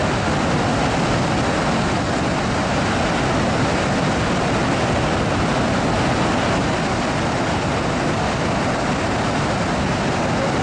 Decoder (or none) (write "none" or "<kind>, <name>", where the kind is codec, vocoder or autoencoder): none